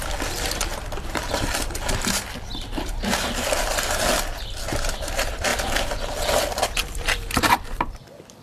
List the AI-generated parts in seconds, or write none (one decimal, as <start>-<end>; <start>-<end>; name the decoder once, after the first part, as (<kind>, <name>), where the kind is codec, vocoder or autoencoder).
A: 5.5-7.5 (vocoder, BigVGAN v2)